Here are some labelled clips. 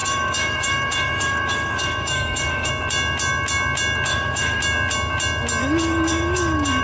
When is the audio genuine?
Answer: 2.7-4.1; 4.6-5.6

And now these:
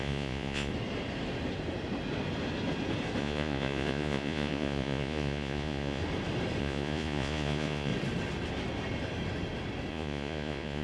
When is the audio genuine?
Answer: 0.7-3.2; 6.0-6.6; 7.9-9.9